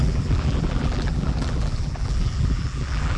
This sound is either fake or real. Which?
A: fake